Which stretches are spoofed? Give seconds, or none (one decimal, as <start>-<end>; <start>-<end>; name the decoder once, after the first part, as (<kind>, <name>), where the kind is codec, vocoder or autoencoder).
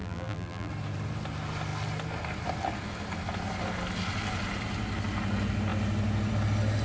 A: 0.0-0.7 (vocoder, BigVGAN v2)